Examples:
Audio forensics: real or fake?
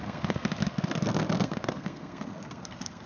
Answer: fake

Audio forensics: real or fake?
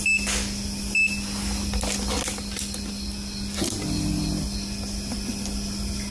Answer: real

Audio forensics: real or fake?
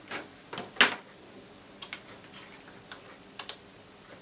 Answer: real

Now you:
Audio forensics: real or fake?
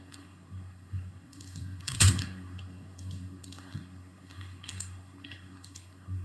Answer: fake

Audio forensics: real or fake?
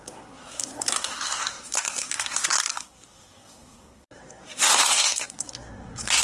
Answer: fake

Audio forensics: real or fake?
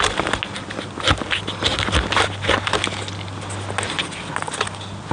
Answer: real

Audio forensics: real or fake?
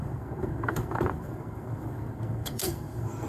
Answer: fake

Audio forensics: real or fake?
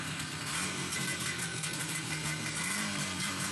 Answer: fake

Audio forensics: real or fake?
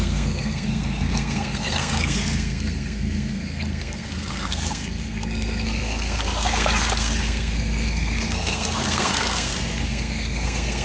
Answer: fake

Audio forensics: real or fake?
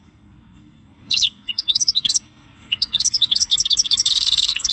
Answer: fake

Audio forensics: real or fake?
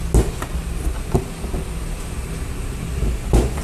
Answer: real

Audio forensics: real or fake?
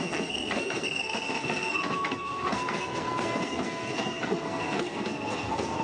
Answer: fake